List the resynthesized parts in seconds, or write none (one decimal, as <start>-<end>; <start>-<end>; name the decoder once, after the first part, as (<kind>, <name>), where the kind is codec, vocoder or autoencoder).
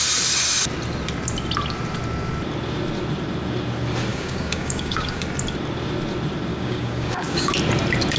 4.1-5.2 (codec, DAC); 6.5-7.5